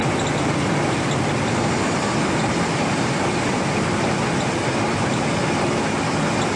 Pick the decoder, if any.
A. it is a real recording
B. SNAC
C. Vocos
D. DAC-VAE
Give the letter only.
A